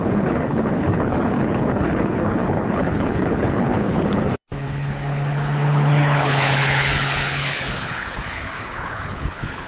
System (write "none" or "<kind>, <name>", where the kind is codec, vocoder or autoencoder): codec, HILCodec